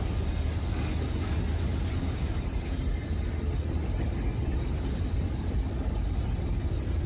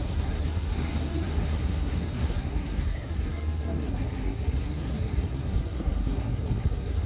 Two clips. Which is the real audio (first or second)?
first